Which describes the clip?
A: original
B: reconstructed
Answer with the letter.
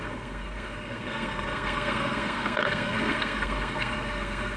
B